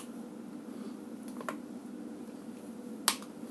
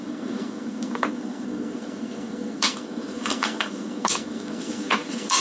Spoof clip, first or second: second